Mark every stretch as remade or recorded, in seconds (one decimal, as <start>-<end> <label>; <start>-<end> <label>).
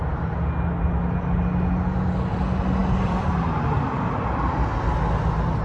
0.0-2.8 recorded; 2.8-3.4 remade; 3.4-5.6 recorded